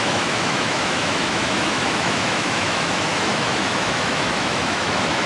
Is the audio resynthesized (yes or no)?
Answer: yes